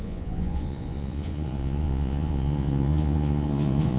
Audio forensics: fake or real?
fake